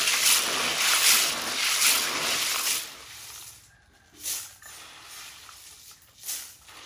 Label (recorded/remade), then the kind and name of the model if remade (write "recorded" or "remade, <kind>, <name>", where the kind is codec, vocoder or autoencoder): recorded